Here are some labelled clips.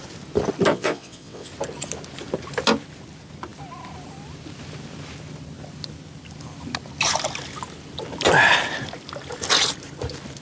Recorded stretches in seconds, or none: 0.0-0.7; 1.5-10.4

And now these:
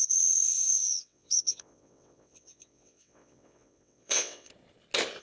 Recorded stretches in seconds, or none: 4.5-5.2

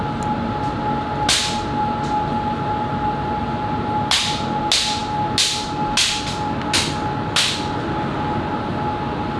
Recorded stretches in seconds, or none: 0.0-9.4

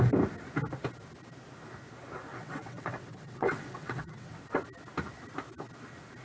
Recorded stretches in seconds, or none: 0.0-2.3; 4.4-6.2

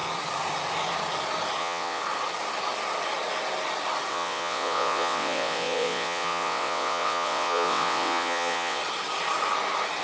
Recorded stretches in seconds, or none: 0.0-1.6; 2.0-4.1; 8.8-10.0

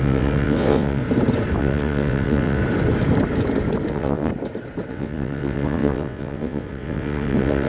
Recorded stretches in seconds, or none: 1.0-1.6; 2.6-3.9; 4.3-4.9